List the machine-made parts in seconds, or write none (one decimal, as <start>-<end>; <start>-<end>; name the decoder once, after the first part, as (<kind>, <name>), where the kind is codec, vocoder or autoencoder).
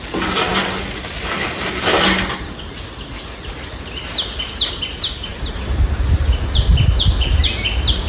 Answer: 5.3-6.0 (vocoder, BigVGAN v2)